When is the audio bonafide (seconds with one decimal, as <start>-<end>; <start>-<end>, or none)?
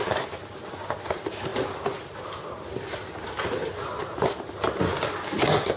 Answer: 0.0-5.8